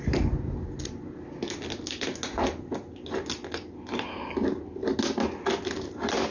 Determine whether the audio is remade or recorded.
recorded